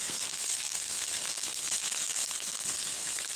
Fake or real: fake